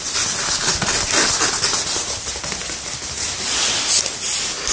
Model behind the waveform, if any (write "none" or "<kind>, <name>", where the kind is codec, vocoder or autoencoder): none